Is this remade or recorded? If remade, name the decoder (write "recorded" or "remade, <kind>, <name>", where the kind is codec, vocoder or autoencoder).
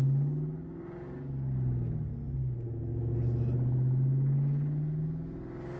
recorded